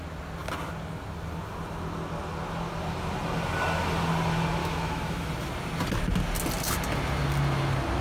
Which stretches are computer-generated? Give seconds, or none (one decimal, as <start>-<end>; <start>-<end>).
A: 4.6-5.3